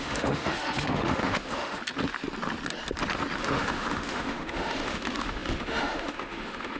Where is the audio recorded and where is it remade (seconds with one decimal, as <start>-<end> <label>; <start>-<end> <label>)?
0.0-1.8 remade; 1.8-3.4 recorded; 3.4-6.8 remade